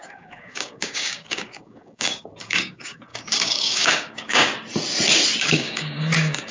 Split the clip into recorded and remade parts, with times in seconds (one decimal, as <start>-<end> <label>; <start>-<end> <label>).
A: 0.0-4.5 remade; 4.5-5.4 recorded; 5.4-6.5 remade